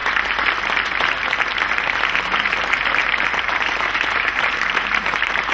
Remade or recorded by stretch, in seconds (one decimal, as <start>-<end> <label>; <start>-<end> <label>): 0.0-2.8 recorded; 2.8-5.5 remade